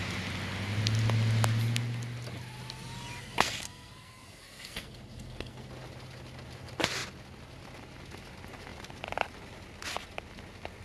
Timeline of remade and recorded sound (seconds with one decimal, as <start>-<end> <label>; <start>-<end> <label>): 0.0-3.2 recorded; 3.2-5.7 remade; 5.7-10.8 recorded